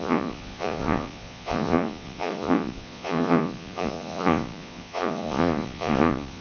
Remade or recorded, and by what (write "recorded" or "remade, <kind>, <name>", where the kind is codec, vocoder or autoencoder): remade, vocoder, Vocos